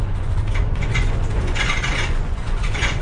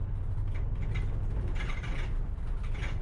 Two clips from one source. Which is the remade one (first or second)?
first